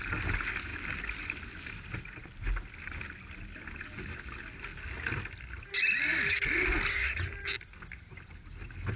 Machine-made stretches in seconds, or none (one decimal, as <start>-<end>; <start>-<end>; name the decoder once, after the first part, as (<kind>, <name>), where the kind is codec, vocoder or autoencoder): none